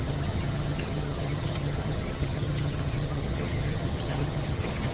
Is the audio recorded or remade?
remade